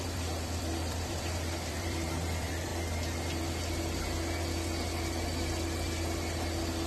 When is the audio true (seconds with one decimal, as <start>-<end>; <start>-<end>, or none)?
2.7-6.9